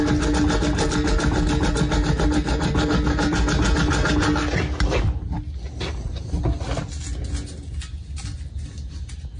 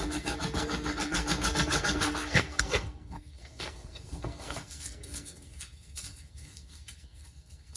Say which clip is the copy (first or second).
second